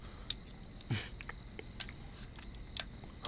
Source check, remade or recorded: recorded